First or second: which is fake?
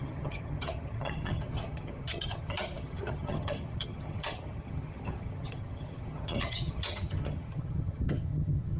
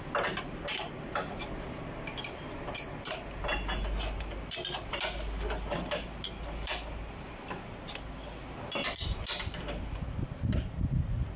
first